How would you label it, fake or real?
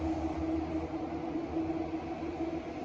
real